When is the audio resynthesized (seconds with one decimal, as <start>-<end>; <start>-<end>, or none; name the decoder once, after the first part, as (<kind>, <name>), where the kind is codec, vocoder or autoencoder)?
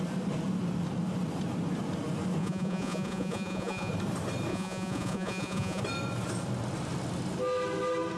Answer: 2.4-3.9 (vocoder, Vocos); 4.5-5.8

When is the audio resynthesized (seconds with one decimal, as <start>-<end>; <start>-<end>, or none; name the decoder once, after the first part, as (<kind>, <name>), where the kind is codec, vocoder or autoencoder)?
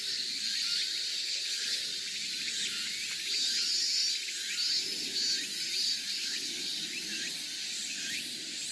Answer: 1.1-1.8 (codec, HILCodec); 6.0-6.8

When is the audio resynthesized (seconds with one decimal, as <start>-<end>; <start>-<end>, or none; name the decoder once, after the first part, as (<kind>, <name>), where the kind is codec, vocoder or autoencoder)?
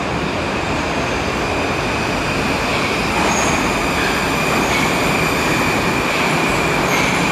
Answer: none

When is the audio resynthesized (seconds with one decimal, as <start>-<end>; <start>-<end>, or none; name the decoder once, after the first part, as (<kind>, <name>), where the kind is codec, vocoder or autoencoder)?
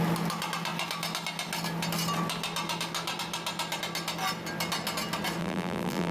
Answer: 5.4-6.1 (vocoder, BigVGAN v2)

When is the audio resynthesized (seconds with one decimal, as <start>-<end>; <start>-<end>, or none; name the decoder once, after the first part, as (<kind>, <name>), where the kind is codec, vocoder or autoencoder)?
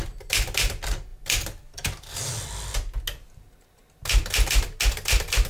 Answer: none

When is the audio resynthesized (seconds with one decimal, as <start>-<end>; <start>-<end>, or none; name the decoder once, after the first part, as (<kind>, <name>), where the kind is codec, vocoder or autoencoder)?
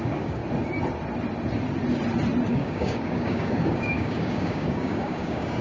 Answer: 0.0-0.4 (codec, DAC); 2.5-5.6